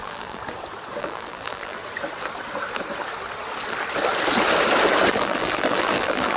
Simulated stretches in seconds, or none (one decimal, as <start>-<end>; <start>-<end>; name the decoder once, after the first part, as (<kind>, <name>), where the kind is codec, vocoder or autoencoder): 0.0-0.4 (vocoder, BigVGAN v2); 1.0-1.8; 5.1-6.4